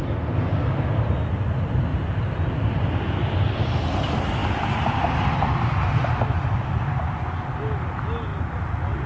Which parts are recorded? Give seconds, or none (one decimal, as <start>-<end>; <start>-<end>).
0.0-1.9; 2.9-8.3